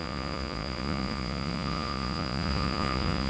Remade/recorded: remade